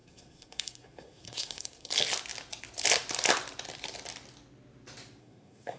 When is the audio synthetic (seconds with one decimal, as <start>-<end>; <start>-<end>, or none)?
0.0-1.9; 5.2-5.8